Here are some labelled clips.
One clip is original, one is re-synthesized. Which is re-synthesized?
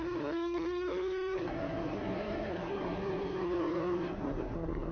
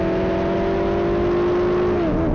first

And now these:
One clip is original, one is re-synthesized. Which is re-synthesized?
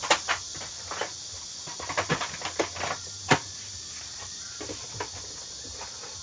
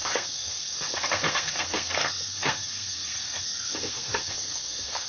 second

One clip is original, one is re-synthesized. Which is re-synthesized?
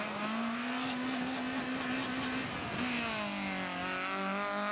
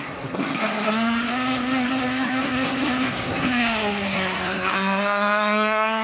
second